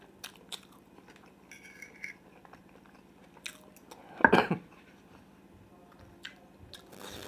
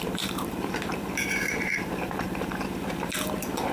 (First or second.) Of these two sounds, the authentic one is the first